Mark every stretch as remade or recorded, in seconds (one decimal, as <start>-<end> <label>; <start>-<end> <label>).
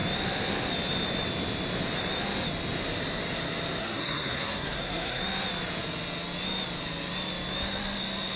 0.0-3.8 recorded; 3.8-5.2 remade; 5.2-8.4 recorded